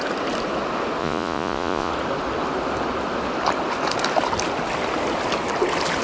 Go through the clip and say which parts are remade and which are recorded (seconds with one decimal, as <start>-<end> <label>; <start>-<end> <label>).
0.0-1.0 recorded; 1.0-1.9 remade; 1.9-6.0 recorded